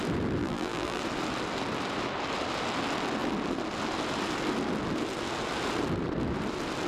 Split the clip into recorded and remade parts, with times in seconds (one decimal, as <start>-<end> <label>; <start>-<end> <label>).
0.0-0.4 recorded; 0.4-1.0 remade; 1.0-6.9 recorded